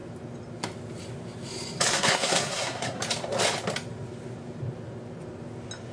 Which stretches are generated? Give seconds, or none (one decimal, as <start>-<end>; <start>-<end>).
1.9-3.0